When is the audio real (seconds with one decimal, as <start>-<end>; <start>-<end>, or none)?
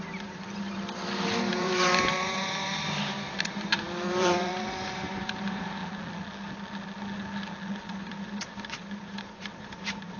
0.7-1.5; 5.8-7.9